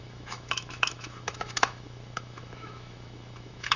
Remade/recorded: remade